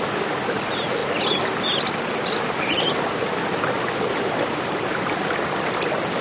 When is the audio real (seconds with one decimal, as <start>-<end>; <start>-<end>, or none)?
0.0-6.2